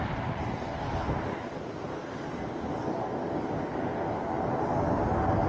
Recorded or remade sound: recorded